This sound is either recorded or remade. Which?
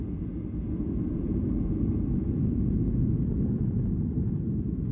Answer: remade